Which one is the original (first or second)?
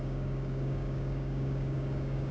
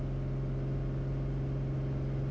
second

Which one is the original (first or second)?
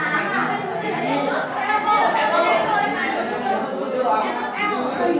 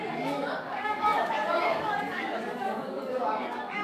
first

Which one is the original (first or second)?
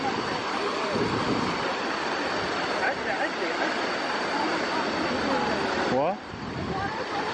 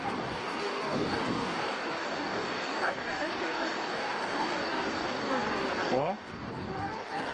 first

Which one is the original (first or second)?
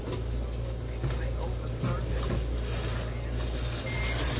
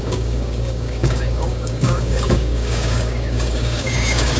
first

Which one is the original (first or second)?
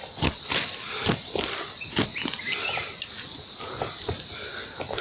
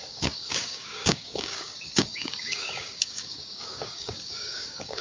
first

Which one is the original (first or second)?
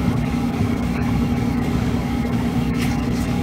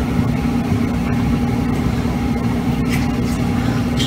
second